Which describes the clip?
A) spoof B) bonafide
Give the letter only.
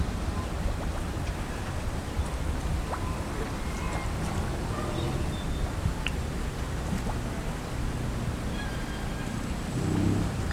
B